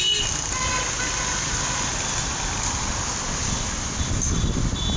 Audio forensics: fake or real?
real